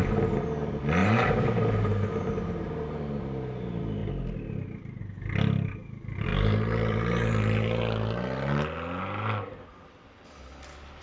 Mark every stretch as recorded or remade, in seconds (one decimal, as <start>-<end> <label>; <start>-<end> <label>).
0.0-1.0 recorded; 1.0-3.0 remade; 3.0-6.3 recorded; 6.3-7.8 remade; 7.8-11.0 recorded